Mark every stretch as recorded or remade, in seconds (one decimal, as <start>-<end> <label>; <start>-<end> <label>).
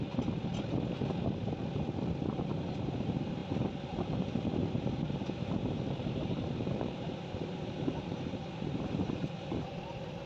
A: 0.0-0.5 remade; 0.5-2.3 recorded; 2.3-10.3 remade